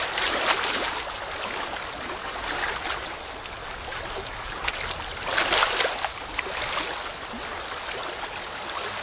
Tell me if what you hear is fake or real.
real